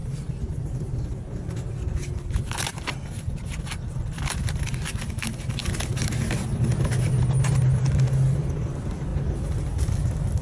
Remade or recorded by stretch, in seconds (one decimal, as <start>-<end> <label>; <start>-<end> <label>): 0.0-10.4 recorded